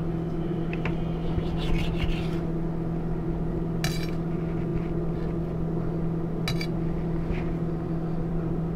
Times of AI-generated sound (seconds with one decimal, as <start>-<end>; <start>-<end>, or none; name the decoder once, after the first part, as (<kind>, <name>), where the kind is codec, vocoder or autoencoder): none